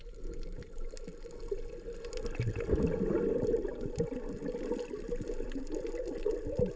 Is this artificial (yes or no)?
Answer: no